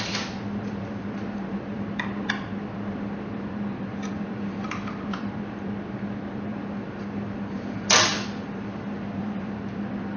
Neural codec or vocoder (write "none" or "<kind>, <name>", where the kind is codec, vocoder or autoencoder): vocoder, BigVGAN v2